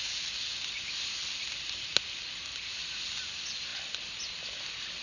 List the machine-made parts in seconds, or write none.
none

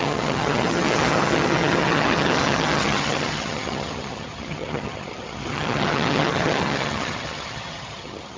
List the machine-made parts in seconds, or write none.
0.0-8.4 (vocoder, HiFi-GAN)

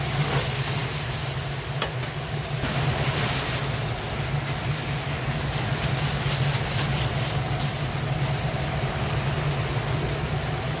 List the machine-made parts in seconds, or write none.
none

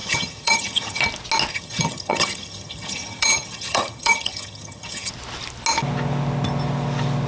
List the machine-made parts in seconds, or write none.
0.0-1.0 (vocoder, HiFi-GAN); 1.5-5.1

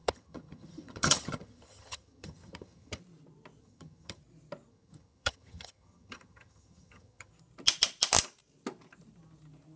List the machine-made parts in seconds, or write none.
0.0-3.0 (vocoder, HiFi-GAN); 3.6-4.2; 4.7-7.3

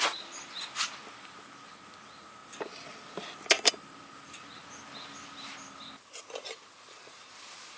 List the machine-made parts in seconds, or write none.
none

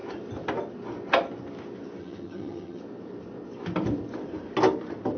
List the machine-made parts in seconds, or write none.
2.0-2.8 (vocoder, HiFi-GAN)

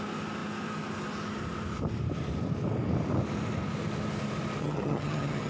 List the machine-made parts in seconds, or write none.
4.6-5.5 (vocoder, HiFi-GAN)